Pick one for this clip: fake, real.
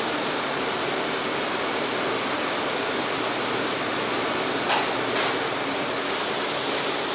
real